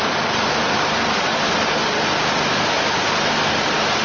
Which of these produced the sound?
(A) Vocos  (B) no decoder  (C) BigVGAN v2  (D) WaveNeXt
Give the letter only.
B